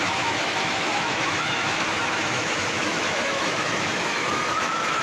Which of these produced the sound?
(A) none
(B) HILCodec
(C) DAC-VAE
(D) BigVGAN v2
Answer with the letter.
C